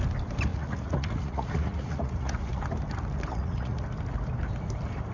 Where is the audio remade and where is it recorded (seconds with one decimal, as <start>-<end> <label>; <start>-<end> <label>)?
0.0-0.5 recorded; 0.5-2.6 remade; 2.6-3.3 recorded; 3.3-3.8 remade; 3.8-5.1 recorded